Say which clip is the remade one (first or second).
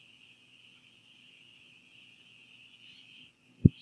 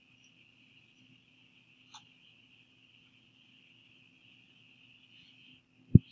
first